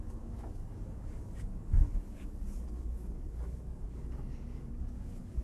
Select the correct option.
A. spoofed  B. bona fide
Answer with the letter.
A